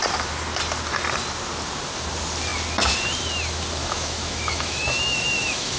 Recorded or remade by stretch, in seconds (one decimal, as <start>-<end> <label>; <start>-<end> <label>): 0.0-3.8 recorded; 3.8-5.8 remade